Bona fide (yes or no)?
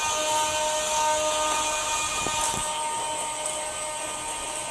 yes